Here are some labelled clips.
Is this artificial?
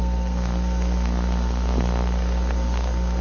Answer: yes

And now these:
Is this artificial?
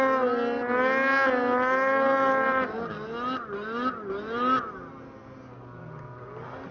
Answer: no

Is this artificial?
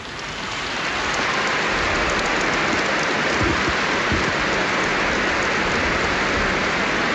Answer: no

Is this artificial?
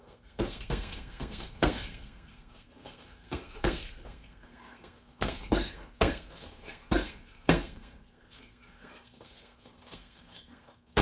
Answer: yes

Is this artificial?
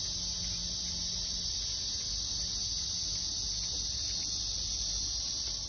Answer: no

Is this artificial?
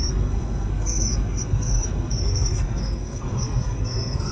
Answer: yes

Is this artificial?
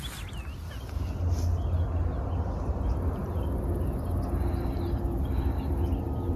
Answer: no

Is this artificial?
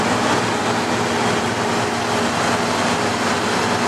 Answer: no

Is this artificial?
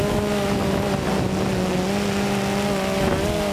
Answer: no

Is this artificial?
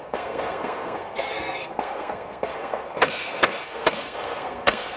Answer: yes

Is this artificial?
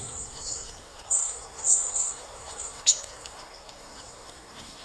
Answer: yes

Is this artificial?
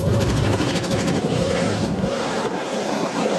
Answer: yes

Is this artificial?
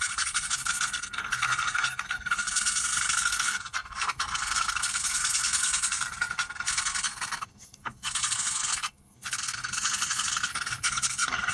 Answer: yes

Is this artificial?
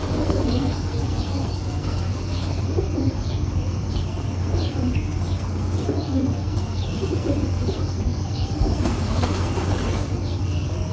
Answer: yes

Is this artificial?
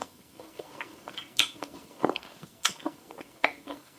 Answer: yes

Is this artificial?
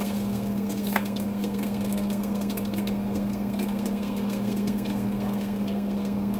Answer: yes